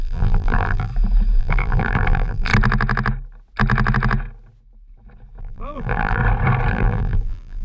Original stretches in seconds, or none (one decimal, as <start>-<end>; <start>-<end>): 0.9-1.4; 2.5-5.4; 6.2-6.7